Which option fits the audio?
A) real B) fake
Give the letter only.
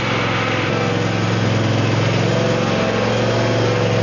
A